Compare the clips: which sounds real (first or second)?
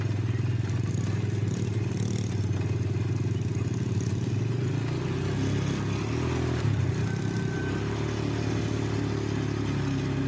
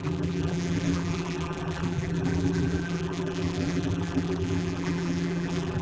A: first